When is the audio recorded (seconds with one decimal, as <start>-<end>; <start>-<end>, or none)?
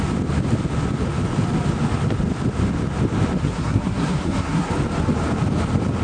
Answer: 0.0-3.4; 4.7-6.0